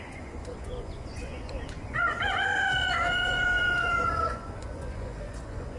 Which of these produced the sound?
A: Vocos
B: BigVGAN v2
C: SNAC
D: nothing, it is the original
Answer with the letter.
A